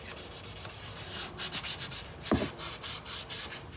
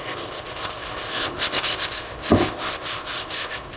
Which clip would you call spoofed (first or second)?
second